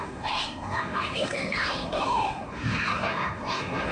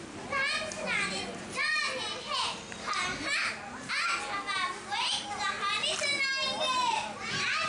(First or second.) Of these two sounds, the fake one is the first